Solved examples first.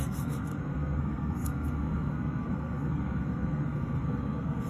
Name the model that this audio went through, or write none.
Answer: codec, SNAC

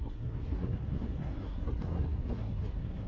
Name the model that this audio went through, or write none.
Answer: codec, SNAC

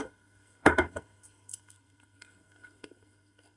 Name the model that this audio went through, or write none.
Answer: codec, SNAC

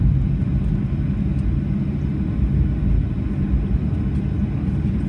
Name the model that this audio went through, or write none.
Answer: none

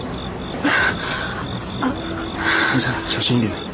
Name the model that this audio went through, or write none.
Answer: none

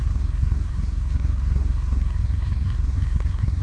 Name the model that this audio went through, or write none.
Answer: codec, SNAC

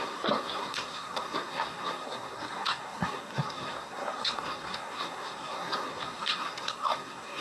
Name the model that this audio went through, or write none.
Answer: codec, SNAC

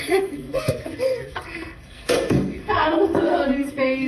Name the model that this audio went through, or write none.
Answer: codec, SNAC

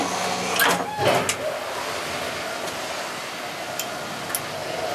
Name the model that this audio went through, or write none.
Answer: none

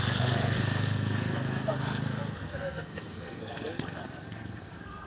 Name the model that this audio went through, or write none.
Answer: codec, SNAC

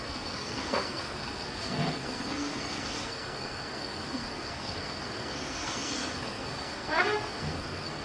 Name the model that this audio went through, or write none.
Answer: codec, SNAC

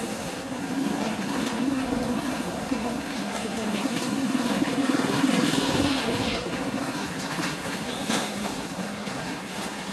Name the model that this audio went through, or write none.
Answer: codec, SNAC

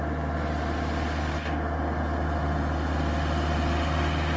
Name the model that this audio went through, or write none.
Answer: none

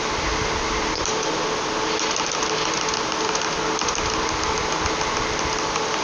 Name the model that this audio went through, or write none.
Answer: none